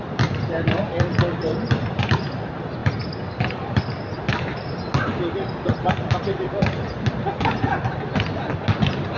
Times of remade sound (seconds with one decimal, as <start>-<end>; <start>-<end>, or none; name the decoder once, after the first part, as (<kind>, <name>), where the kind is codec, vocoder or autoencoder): none